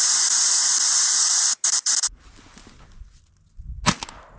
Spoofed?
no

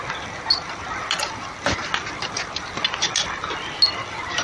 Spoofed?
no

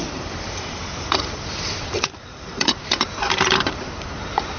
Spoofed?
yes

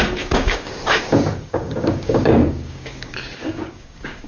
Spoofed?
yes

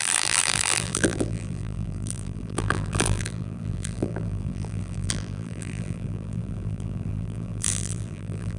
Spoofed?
yes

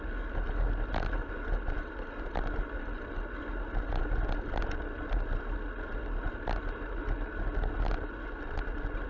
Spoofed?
no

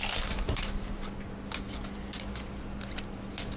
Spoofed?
no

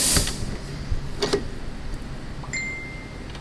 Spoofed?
no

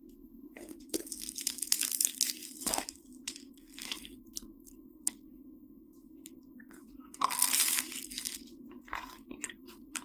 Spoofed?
yes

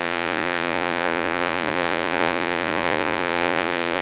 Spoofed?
yes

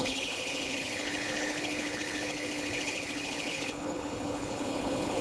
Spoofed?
yes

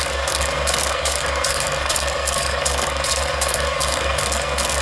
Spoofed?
yes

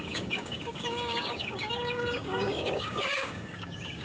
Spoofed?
yes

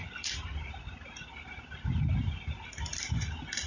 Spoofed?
no